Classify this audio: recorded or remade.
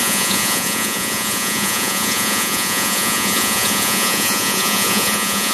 remade